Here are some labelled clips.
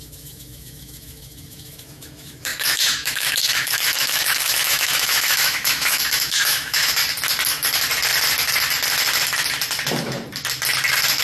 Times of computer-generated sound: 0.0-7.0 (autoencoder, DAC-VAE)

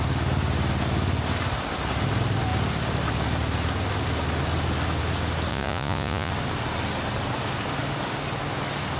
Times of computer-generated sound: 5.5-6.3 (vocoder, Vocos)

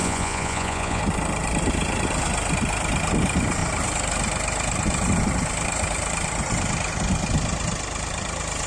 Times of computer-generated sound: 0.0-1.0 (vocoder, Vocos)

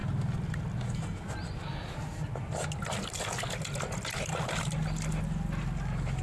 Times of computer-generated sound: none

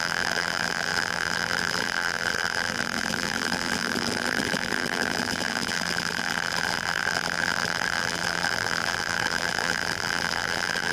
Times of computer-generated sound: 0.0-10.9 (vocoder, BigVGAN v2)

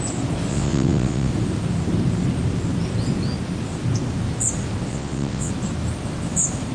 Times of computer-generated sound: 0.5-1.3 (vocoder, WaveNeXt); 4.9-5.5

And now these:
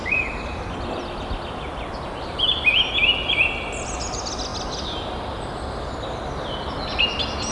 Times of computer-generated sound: none

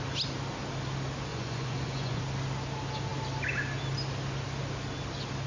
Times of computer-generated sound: 1.3-2.2 (vocoder, Vocos)